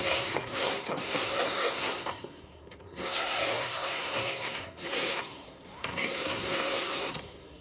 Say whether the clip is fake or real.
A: fake